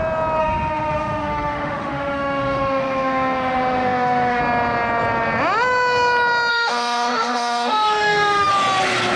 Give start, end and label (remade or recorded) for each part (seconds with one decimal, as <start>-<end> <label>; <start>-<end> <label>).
0.0-0.4 recorded; 0.4-4.4 remade; 4.4-6.5 recorded; 6.5-8.5 remade; 8.5-9.2 recorded